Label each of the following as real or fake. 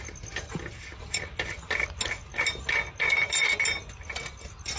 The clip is real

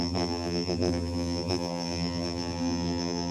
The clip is fake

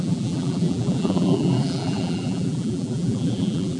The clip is fake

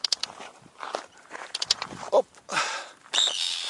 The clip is fake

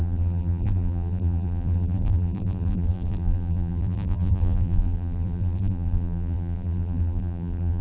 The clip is fake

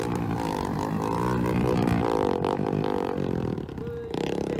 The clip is fake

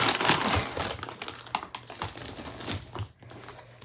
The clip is real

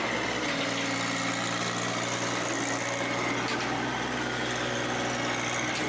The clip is real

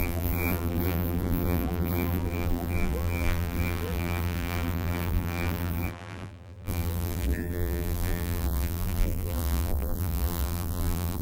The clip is fake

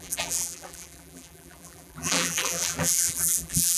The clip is fake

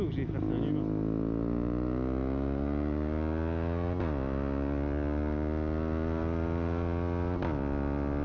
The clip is real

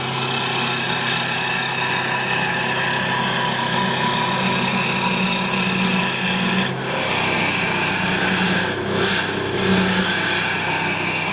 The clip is real